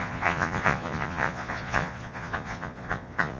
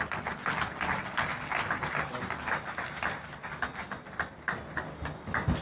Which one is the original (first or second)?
second